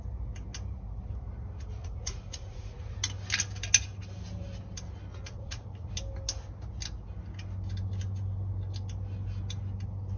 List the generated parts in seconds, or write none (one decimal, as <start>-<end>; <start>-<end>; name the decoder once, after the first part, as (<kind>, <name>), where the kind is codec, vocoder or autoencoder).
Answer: 1.8-3.0 (vocoder, Vocos); 5.1-5.9